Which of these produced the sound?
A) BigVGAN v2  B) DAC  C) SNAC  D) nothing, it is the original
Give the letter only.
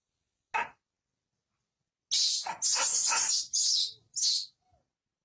D